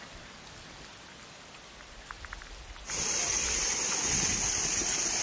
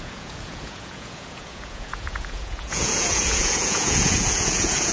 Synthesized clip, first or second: second